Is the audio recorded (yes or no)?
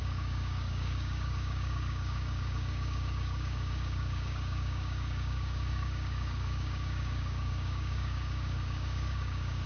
no